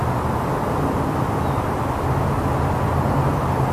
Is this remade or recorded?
recorded